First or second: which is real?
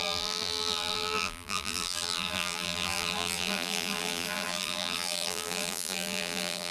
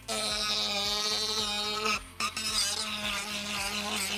second